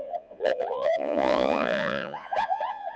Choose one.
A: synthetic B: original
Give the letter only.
A